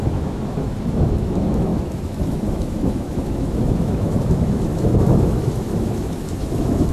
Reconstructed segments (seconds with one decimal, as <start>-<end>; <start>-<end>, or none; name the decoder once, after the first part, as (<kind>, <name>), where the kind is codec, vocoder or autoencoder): 0.0-6.9 (autoencoder, DAC-VAE)